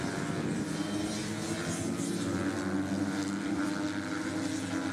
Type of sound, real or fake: real